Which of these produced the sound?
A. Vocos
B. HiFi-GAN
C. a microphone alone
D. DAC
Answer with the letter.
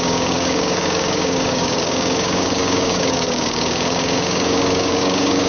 D